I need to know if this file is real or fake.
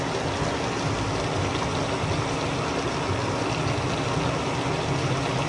real